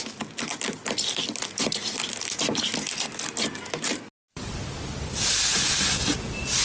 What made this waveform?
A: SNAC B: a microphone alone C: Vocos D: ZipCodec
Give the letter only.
B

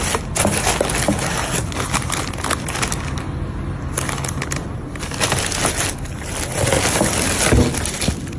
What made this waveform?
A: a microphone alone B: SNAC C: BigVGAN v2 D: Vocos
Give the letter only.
A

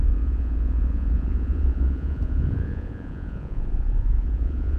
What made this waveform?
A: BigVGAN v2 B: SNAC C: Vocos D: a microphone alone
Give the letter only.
C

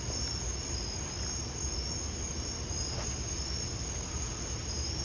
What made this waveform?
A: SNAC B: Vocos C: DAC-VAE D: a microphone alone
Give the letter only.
D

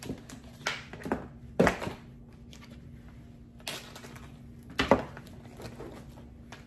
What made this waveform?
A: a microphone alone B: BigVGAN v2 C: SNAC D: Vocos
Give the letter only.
A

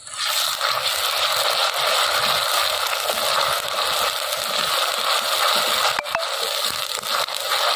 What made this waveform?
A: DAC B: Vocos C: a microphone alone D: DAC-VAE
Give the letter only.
C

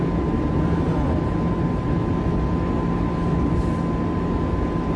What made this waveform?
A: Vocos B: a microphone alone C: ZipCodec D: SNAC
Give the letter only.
B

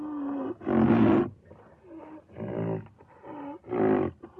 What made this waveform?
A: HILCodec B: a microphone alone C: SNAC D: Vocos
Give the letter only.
B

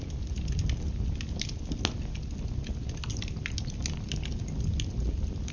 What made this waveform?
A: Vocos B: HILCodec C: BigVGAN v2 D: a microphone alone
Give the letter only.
D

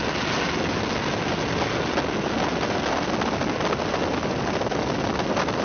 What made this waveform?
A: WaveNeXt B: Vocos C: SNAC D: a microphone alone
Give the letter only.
D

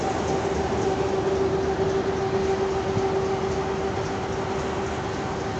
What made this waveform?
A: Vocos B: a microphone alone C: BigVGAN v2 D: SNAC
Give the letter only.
B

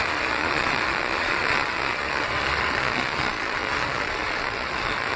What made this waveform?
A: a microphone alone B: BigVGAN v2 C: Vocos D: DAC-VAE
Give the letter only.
C